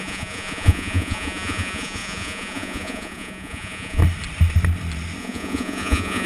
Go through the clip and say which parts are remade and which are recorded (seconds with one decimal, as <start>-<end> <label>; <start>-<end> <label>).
0.0-4.0 remade; 4.0-5.2 recorded; 5.2-6.3 remade